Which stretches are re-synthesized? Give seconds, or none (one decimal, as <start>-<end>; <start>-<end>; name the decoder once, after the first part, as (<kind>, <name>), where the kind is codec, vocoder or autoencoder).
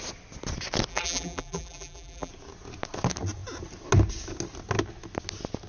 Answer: 0.9-2.3 (vocoder, BigVGAN v2)